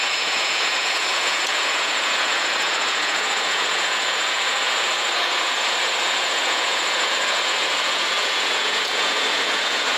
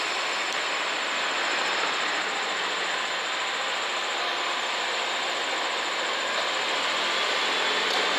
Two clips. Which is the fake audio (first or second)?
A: first